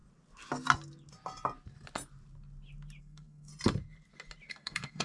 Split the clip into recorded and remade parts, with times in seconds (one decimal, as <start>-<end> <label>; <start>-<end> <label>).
0.0-3.0 recorded; 3.0-3.5 remade; 3.5-4.5 recorded; 4.5-5.0 remade